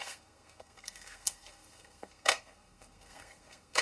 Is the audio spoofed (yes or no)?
yes